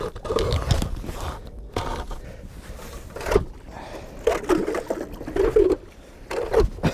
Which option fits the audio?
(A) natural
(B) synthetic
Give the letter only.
A